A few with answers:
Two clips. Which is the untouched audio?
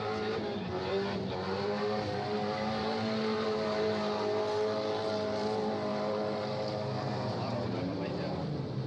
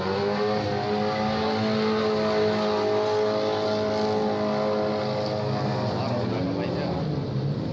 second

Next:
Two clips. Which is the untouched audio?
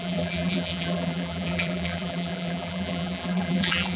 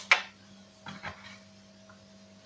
second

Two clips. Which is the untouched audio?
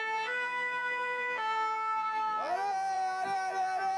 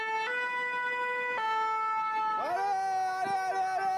second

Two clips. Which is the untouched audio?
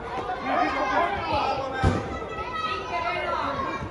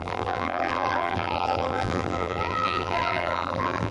first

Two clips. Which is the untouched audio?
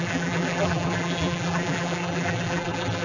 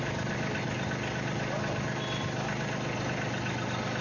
second